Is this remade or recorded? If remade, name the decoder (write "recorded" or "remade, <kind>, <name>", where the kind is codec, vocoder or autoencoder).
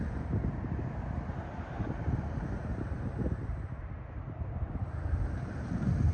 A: remade, vocoder, BigVGAN v2